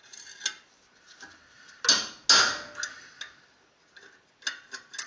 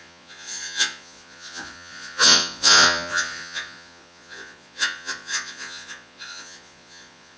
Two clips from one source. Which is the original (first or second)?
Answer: first